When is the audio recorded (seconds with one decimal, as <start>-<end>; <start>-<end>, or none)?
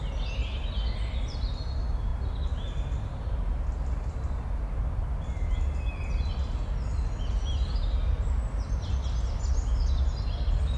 0.0-10.8